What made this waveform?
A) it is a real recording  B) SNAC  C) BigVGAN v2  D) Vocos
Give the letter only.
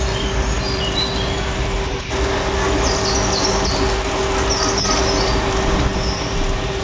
A